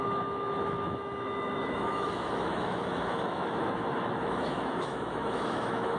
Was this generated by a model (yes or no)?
yes